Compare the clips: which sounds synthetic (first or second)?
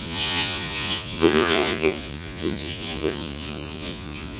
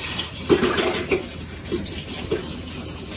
first